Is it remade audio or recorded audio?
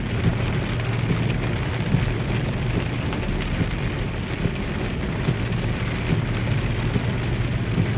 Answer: recorded